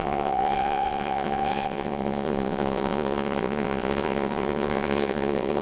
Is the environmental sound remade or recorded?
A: remade